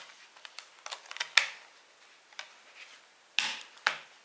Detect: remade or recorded recorded